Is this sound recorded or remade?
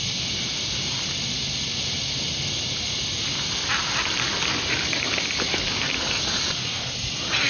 recorded